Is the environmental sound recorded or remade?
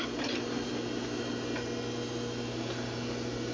recorded